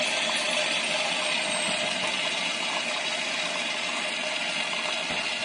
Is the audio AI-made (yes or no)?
no